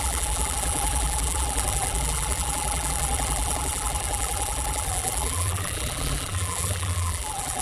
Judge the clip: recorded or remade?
remade